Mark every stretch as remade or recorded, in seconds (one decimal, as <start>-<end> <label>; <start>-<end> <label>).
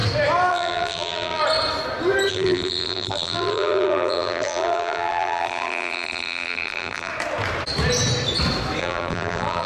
0.0-0.5 recorded; 0.5-1.4 remade; 1.4-2.3 recorded; 2.3-7.1 remade; 7.1-8.8 recorded; 8.8-9.7 remade